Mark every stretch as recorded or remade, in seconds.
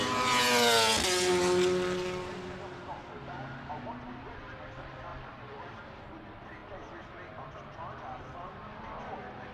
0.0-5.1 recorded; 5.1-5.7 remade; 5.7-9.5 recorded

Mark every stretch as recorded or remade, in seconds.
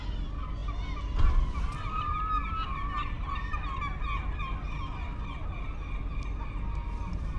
0.0-7.4 recorded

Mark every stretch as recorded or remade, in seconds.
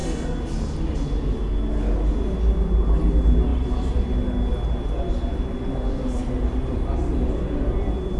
0.0-6.2 recorded; 6.2-8.2 remade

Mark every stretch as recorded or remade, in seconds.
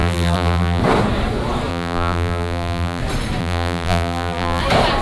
0.0-0.8 remade; 0.8-1.7 recorded; 1.7-3.0 remade; 3.0-3.4 recorded; 3.4-4.6 remade; 4.6-5.0 recorded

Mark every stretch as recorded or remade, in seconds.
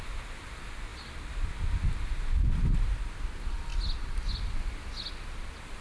0.0-5.8 recorded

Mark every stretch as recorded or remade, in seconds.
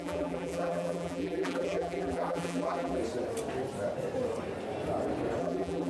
0.0-3.0 remade; 3.0-5.4 recorded; 5.4-5.9 remade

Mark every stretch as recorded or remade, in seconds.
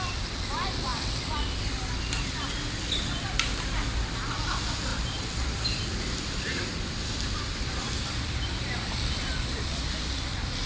0.0-0.9 recorded; 0.9-2.2 remade; 2.2-4.9 recorded; 4.9-9.7 remade; 9.7-10.7 recorded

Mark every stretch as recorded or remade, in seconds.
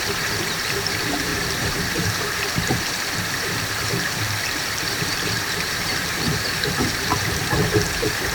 0.0-8.3 remade